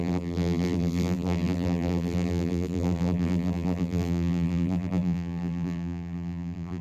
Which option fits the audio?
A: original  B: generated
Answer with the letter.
B